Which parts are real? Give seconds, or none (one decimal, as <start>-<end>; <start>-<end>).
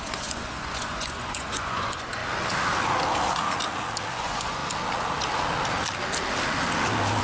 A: 2.2-4.1; 4.6-7.2